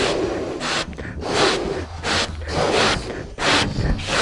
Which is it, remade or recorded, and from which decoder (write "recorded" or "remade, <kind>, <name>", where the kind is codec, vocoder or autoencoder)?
recorded